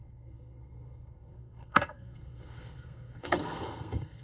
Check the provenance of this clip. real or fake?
fake